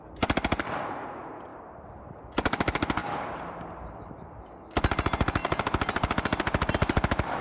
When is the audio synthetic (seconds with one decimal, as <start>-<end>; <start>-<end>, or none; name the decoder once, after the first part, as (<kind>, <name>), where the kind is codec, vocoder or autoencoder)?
1.5-2.0 (vocoder, BigVGAN v2); 3.0-4.5